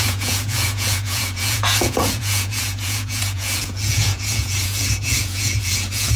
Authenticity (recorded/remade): remade